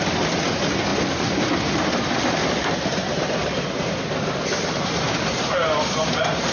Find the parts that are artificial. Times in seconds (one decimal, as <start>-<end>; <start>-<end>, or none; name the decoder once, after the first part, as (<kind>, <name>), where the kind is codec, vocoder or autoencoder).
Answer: none